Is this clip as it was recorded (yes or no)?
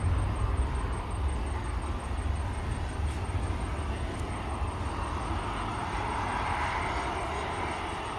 yes